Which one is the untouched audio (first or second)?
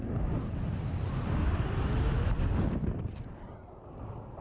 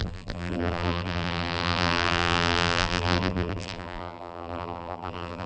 first